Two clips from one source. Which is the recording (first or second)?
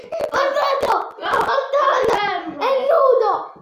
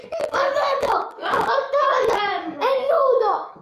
first